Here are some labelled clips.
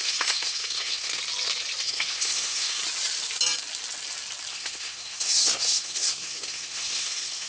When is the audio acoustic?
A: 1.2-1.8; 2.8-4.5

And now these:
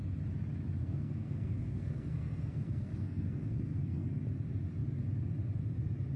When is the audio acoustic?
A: 0.0-0.8; 4.2-6.2

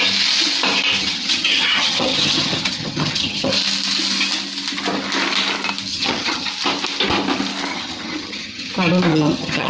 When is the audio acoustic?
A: 0.0-1.0; 3.5-5.9; 6.5-7.7; 8.7-9.1

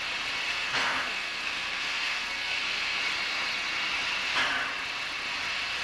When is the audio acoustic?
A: 0.0-0.5; 3.0-5.8

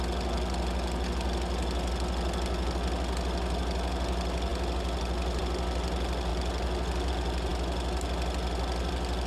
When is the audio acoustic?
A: 0.0-9.3

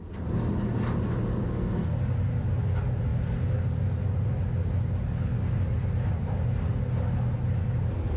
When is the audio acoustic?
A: 0.0-1.4; 1.9-8.2

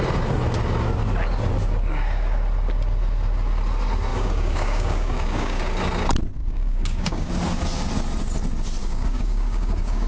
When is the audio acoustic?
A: 0.0-4.1; 5.6-6.4; 7.3-8.8

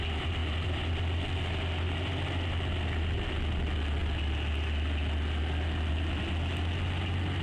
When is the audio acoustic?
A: 0.0-7.4